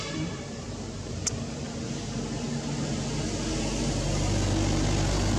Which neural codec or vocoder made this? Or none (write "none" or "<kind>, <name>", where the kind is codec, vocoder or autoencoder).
none